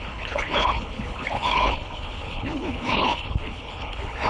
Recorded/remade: remade